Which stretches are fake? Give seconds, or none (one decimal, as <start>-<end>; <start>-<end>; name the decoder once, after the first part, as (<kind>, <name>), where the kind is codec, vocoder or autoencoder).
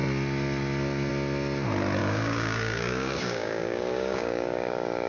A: 2.0-5.1 (codec, DAC)